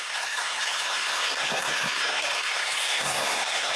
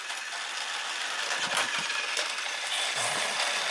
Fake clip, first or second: first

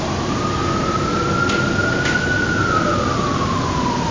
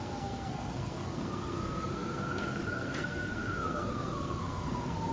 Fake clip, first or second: second